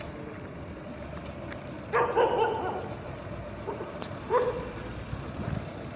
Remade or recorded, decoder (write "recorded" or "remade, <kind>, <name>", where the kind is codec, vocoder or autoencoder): recorded